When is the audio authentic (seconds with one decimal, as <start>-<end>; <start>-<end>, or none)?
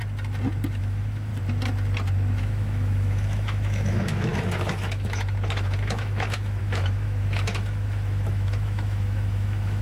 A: 0.0-0.8; 1.3-2.4